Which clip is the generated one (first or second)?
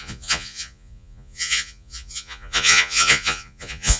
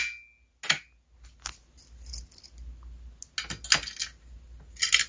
first